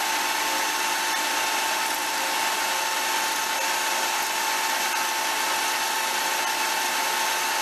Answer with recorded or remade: recorded